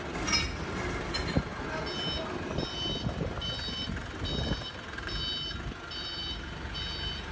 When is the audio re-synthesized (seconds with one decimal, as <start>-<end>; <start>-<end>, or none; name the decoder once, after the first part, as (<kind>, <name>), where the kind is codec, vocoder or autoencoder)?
none